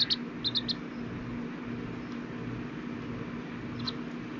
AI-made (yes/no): no